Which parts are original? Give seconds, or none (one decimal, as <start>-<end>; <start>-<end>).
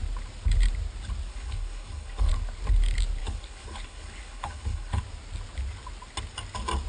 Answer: 0.0-1.3; 2.3-3.2; 5.0-6.9